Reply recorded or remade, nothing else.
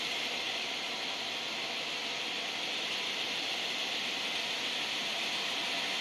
recorded